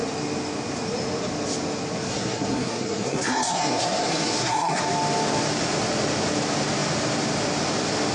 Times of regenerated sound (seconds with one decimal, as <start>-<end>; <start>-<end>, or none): 2.1-4.8